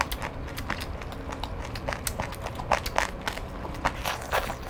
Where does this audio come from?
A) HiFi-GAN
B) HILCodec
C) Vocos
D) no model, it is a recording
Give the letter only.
D